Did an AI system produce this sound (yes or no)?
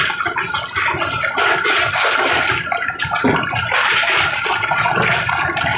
no